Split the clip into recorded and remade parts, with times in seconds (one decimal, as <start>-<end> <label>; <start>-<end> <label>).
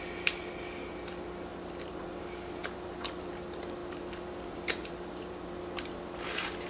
0.0-1.5 recorded; 1.5-2.2 remade; 2.2-2.6 recorded; 2.6-3.3 remade; 3.3-3.8 recorded; 3.8-5.6 remade; 5.6-6.7 recorded